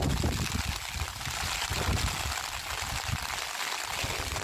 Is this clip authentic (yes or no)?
yes